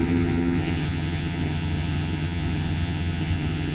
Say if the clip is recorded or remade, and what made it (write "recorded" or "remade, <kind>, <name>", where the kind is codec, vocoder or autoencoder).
remade, vocoder, HiFi-GAN